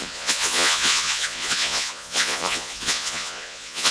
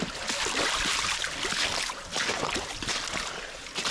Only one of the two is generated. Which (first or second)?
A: first